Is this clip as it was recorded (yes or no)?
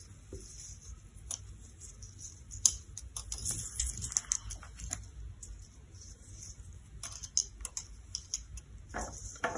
yes